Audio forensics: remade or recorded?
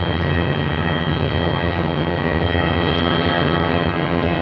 remade